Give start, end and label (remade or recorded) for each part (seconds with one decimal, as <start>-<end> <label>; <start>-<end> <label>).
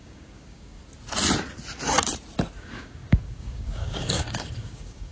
0.0-0.8 remade; 0.8-2.6 recorded; 2.6-5.1 remade